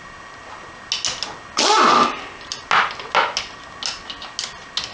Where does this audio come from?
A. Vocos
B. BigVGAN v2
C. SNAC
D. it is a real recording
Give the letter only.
D